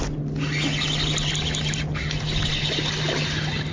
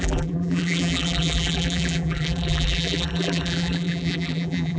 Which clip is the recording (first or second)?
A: first